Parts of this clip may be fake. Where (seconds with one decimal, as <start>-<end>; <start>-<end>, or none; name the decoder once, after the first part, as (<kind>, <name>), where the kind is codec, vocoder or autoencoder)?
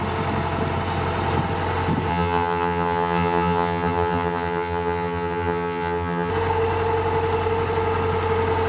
2.1-6.3 (vocoder, HiFi-GAN)